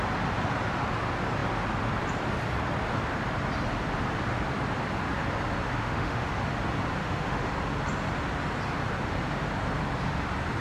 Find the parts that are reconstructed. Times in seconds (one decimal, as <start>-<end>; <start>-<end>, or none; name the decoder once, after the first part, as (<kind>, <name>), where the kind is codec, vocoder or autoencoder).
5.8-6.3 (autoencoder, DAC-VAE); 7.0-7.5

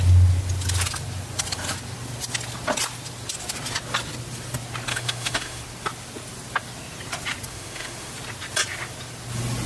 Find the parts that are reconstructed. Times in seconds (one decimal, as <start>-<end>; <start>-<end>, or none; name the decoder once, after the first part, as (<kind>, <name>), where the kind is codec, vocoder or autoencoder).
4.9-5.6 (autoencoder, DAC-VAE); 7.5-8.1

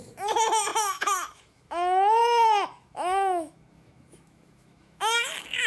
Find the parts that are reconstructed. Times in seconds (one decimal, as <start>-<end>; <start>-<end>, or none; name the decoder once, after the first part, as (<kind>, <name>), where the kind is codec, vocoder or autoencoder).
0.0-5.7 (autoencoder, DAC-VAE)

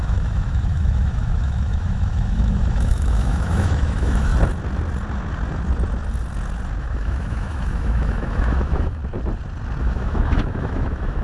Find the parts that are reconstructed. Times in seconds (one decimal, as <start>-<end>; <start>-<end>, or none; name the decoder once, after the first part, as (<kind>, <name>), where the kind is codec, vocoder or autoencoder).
0.0-4.3 (autoencoder, DAC-VAE); 6.8-9.0; 9.8-11.2